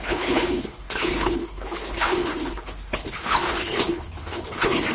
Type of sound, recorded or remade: remade